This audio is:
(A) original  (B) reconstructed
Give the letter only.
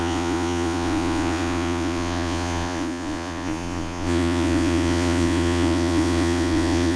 B